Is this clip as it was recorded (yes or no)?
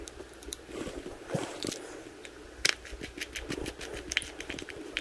yes